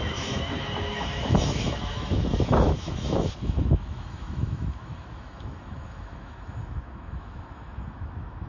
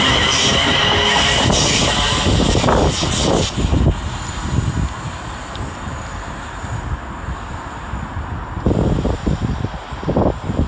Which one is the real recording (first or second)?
second